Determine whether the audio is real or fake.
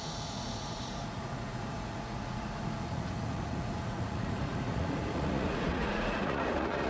fake